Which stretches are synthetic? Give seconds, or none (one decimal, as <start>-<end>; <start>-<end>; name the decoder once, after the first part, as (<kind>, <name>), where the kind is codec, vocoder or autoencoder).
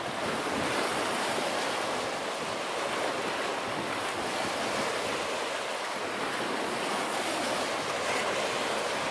none